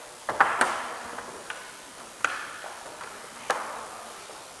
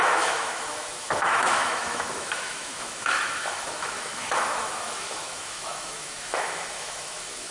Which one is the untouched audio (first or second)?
first